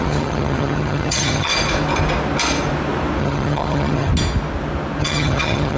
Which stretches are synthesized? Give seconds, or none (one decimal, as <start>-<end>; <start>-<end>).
0.0-1.5; 3.2-4.1; 5.0-5.8